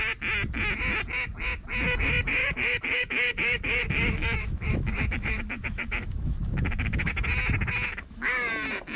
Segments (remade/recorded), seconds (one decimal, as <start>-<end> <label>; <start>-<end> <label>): 0.0-2.4 recorded; 2.4-7.1 remade; 7.1-7.9 recorded; 7.9-8.5 remade; 8.5-9.0 recorded